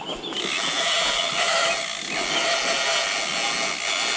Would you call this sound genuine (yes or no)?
yes